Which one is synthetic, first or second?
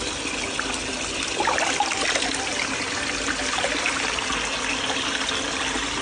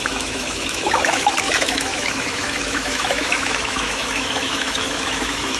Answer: second